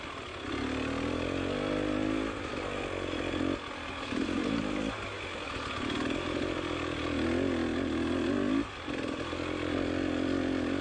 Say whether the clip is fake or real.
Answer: real